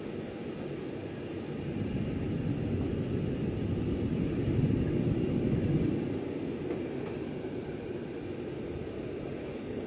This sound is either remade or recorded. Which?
recorded